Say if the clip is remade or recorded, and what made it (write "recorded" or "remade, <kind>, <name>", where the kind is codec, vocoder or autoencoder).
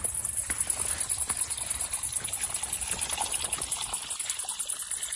recorded